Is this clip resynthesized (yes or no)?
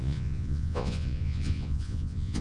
yes